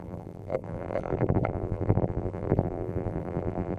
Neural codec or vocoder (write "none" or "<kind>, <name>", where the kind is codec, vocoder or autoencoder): vocoder, BigVGAN v2